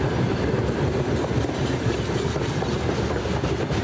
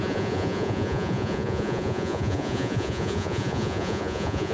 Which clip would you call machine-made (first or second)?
second